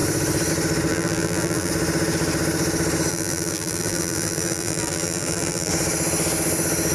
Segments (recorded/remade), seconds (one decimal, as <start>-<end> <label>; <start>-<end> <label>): 0.0-0.9 recorded; 0.9-1.7 remade; 1.7-3.1 recorded; 3.1-5.7 remade; 5.7-6.9 recorded